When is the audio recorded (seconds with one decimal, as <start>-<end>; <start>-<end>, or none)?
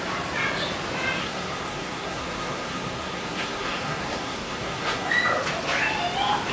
0.0-1.2; 5.1-6.5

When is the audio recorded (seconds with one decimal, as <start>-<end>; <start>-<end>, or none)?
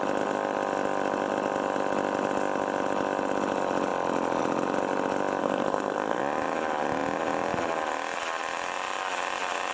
0.0-5.4; 6.2-9.7